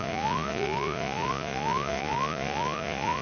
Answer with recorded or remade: remade